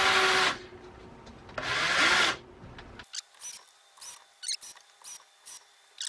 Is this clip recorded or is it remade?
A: recorded